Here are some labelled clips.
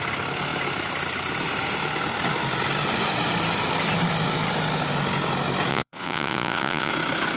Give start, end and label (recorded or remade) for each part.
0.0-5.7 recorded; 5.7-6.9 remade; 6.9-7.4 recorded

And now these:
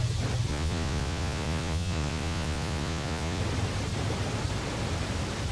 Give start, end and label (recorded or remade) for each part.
0.0-0.5 recorded; 0.5-3.4 remade; 3.4-5.5 recorded

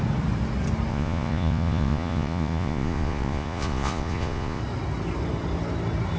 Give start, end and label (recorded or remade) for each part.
0.0-0.9 recorded; 0.9-4.6 remade; 4.6-6.2 recorded